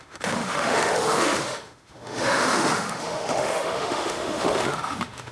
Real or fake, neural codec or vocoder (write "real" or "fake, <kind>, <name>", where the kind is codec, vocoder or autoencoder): fake, autoencoder, DAC-VAE